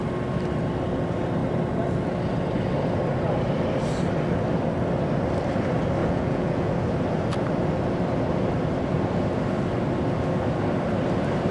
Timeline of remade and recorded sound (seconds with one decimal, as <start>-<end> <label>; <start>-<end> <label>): 0.0-6.0 recorded; 6.0-6.7 remade; 6.7-11.5 recorded